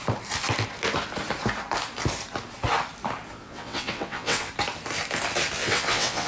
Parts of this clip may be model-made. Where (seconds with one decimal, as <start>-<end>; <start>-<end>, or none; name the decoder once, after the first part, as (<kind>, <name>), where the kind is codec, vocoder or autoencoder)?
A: 3.4-4.5 (vocoder, WaveNeXt); 5.6-6.3